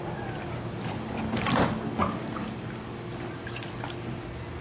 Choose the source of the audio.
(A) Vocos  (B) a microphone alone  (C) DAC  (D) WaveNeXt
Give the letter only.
B